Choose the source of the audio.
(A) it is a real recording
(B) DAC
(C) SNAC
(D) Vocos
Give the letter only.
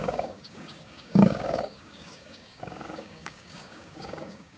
B